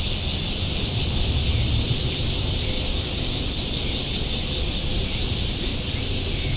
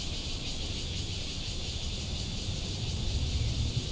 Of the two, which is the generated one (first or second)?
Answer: second